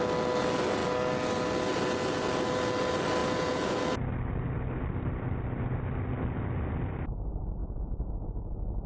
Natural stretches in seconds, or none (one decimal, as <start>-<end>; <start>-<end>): 0.0-3.2; 3.8-7.6; 8.1-8.9